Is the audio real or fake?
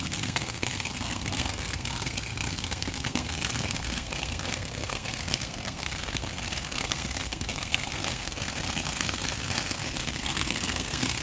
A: fake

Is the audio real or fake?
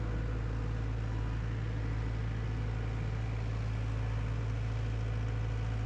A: real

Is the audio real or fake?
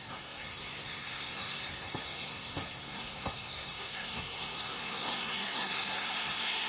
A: fake